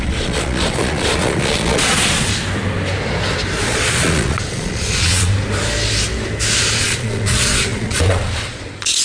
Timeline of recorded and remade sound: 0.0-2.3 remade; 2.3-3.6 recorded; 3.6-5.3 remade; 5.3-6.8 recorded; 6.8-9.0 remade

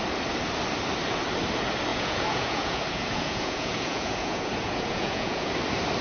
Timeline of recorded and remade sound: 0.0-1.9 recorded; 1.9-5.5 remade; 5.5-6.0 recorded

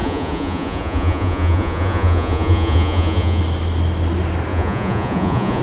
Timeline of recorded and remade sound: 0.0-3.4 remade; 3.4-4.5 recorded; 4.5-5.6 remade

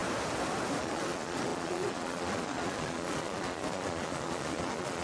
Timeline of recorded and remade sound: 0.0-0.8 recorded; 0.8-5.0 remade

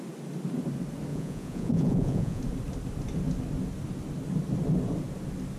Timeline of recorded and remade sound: 0.0-1.1 recorded; 1.1-2.4 remade; 2.4-5.6 recorded